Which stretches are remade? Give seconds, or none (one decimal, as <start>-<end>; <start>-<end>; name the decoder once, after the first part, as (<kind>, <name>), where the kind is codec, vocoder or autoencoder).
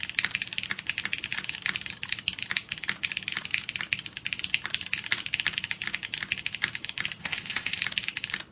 7.2-7.8 (codec, ZipCodec)